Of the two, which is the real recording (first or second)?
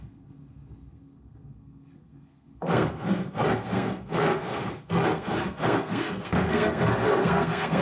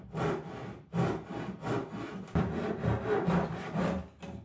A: second